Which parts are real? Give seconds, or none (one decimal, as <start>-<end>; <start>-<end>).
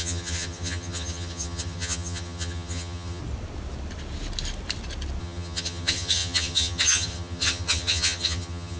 3.2-5.2